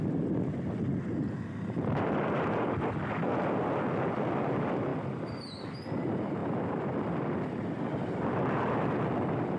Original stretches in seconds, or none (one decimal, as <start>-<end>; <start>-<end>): 0.0-9.6